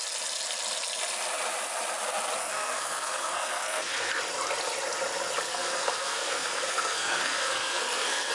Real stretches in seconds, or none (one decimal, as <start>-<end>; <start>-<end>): 0.0-2.4; 4.1-5.5